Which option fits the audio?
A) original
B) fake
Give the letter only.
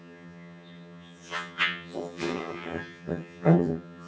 B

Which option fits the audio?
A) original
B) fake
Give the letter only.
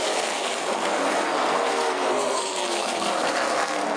B